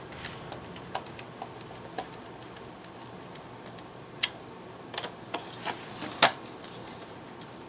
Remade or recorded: recorded